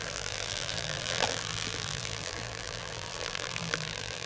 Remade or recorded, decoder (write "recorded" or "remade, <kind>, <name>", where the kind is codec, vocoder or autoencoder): remade, vocoder, BigVGAN v2